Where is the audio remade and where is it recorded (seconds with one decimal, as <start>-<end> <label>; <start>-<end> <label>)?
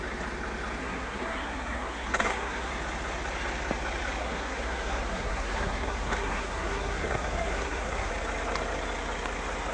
0.0-0.8 recorded; 0.8-2.7 remade; 2.7-4.2 recorded; 4.2-8.1 remade; 8.1-9.7 recorded